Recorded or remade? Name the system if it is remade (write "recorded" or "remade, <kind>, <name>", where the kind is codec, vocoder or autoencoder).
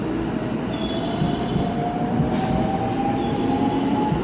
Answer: recorded